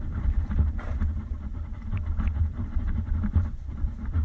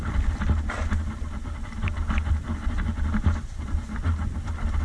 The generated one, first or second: first